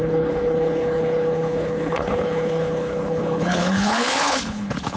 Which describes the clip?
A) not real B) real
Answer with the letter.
A